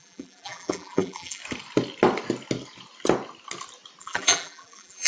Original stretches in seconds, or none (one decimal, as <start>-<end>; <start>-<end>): 1.4-4.0